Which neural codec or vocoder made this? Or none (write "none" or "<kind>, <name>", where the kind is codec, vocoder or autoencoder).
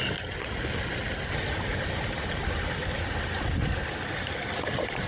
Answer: none